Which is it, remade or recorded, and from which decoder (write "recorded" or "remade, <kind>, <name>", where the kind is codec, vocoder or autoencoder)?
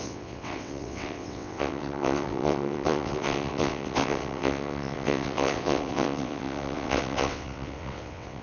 remade, vocoder, WaveNeXt